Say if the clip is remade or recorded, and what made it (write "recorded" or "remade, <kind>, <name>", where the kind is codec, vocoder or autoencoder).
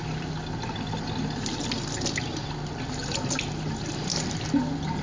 recorded